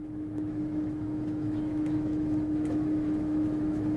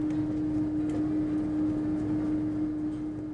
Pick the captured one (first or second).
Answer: second